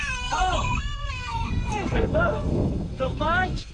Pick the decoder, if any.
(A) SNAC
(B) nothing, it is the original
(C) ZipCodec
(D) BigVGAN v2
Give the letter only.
A